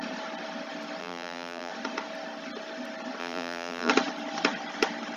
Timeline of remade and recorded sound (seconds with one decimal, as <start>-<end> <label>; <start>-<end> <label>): 0.0-1.0 recorded; 1.0-1.7 remade; 1.7-3.2 recorded; 3.2-3.9 remade; 3.9-5.2 recorded